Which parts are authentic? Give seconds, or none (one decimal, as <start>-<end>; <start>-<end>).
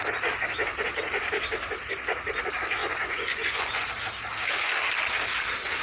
0.0-2.8; 3.9-5.8